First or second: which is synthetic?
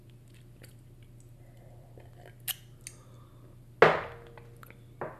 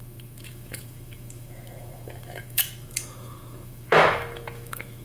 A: second